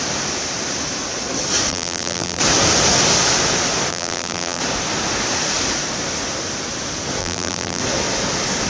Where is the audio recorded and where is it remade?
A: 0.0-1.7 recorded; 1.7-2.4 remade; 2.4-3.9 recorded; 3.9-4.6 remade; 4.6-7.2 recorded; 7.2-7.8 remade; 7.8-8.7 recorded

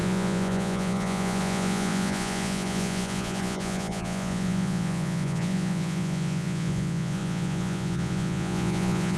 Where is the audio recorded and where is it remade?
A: 0.0-9.2 remade

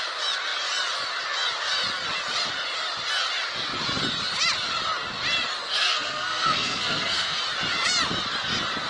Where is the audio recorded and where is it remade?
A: 0.0-5.6 recorded; 5.6-7.4 remade; 7.4-8.9 recorded

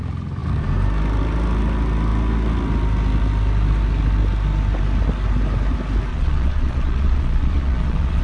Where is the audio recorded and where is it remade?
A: 0.0-6.1 recorded; 6.1-8.2 remade

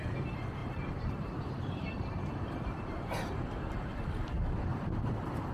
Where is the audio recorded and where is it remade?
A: 0.0-0.6 recorded; 0.6-3.9 remade; 3.9-4.7 recorded; 4.7-5.5 remade

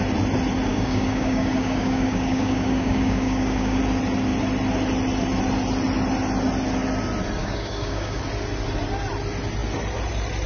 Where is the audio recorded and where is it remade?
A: 0.0-0.7 recorded; 0.7-3.8 remade; 3.8-7.4 recorded; 7.4-8.2 remade; 8.2-10.5 recorded